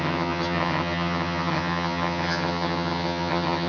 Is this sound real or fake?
fake